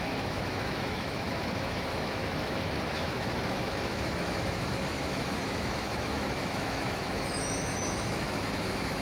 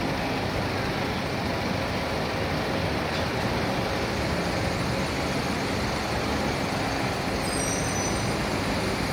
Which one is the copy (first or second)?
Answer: first